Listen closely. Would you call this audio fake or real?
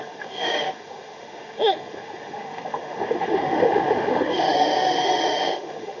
fake